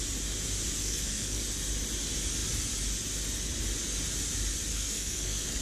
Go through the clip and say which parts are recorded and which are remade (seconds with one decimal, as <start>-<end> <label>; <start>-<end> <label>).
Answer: 0.0-0.8 recorded; 0.8-1.4 remade; 1.4-4.7 recorded; 4.7-5.6 remade